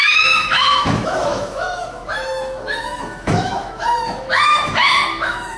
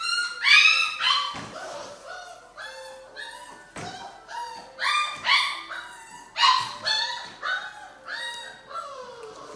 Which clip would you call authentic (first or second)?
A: second